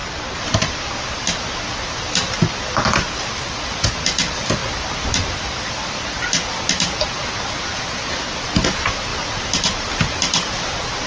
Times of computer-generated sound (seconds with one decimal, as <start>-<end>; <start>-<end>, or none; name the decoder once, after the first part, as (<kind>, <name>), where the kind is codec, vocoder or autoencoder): none